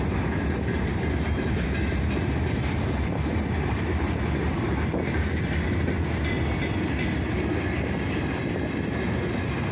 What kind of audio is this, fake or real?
real